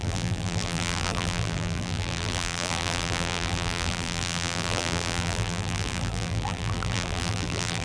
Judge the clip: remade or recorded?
remade